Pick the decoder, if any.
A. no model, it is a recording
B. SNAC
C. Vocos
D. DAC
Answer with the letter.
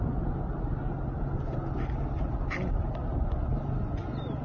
A